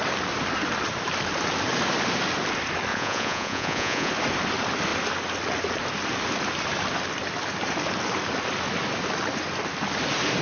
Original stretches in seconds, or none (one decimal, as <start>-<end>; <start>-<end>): 0.0-2.9; 4.1-10.4